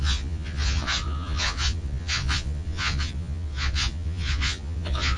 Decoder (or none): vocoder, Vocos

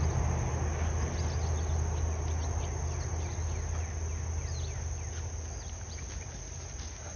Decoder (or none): none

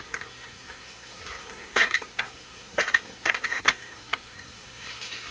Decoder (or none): codec, SNAC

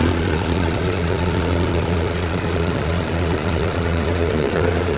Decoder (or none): vocoder, Vocos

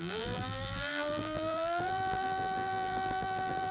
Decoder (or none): vocoder, BigVGAN v2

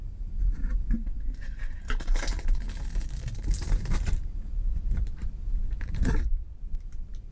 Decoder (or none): vocoder, BigVGAN v2